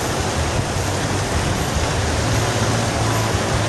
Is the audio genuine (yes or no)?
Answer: yes